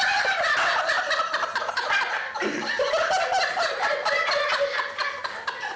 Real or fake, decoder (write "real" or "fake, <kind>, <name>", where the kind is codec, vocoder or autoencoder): real